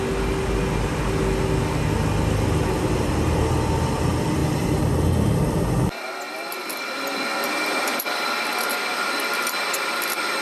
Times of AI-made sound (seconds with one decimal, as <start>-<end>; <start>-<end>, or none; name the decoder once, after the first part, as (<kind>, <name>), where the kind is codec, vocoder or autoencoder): 4.4-8.4 (vocoder, BigVGAN v2)